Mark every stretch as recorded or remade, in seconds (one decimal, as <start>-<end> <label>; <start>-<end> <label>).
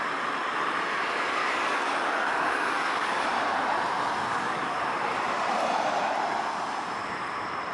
0.0-1.4 recorded; 1.4-3.1 remade; 3.1-4.3 recorded; 4.3-4.8 remade; 4.8-7.7 recorded